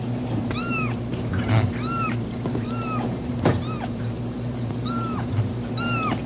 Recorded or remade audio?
remade